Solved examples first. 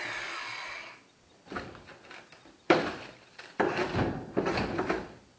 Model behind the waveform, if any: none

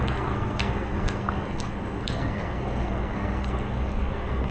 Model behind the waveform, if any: codec, SNAC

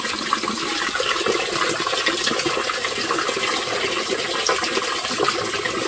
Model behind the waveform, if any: none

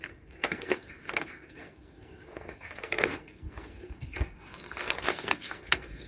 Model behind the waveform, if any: codec, SNAC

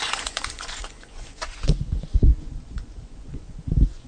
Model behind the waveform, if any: vocoder, Vocos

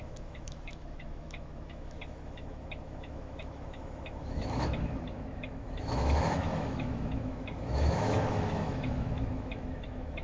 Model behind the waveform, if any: autoencoder, DAC-VAE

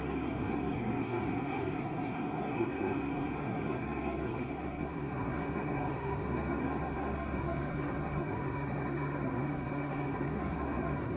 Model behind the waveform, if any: codec, SNAC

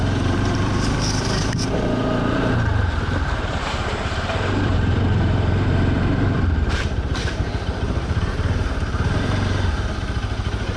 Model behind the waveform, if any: vocoder, BigVGAN v2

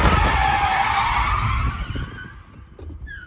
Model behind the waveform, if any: none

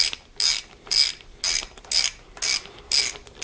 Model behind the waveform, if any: none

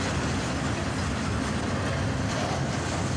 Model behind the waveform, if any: none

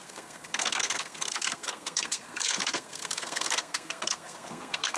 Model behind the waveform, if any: codec, SNAC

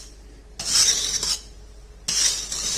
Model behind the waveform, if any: none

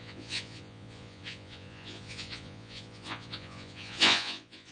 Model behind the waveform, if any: vocoder, Vocos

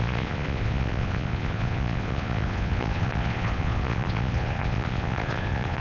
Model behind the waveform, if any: vocoder, Vocos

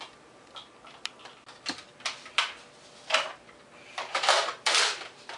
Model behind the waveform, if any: none